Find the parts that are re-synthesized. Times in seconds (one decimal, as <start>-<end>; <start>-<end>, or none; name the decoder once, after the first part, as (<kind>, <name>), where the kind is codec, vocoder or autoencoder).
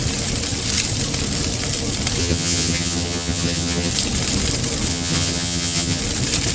2.2-3.9 (vocoder, HiFi-GAN); 4.9-6.0